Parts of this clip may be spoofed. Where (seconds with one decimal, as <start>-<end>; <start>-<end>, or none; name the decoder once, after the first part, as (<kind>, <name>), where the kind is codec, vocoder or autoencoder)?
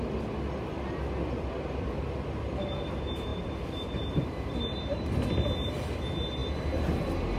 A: 3.3-6.0 (vocoder, BigVGAN v2)